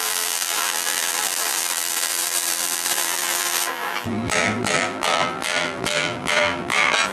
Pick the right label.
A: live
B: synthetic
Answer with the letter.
B